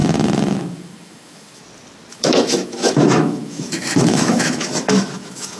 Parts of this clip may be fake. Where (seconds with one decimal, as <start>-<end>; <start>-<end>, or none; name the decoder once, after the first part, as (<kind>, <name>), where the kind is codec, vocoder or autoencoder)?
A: 0.0-1.6 (autoencoder, DAC-VAE); 2.1-5.6